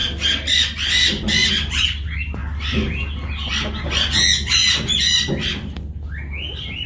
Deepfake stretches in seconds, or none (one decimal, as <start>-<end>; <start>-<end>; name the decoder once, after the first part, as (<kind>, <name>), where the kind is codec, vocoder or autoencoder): none

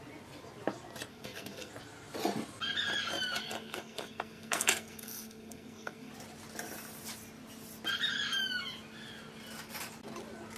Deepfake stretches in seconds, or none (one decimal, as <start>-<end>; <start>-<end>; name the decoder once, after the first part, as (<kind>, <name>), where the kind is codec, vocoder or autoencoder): 1.1-1.7 (codec, SNAC); 3.4-6.1

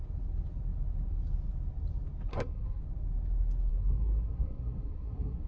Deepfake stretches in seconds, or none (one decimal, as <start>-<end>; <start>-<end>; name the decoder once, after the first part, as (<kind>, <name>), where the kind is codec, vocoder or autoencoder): 2.3-2.8 (codec, SNAC); 3.7-5.5

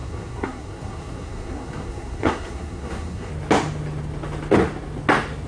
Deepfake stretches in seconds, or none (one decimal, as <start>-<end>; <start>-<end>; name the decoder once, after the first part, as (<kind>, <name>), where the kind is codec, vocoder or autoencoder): 0.0-3.3 (codec, SNAC)

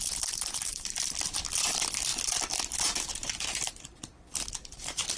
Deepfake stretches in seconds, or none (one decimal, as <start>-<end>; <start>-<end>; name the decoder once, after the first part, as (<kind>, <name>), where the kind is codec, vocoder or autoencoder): none